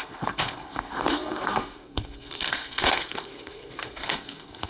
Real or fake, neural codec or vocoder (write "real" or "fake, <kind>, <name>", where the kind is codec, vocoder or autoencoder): fake, codec, SNAC